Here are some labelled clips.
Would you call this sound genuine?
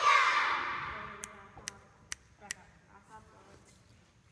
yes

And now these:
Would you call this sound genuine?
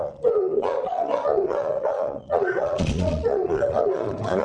no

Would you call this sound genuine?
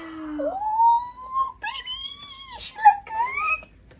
yes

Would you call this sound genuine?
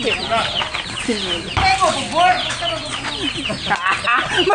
yes